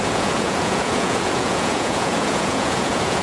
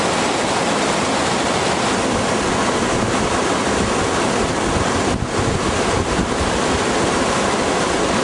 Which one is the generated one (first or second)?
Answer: first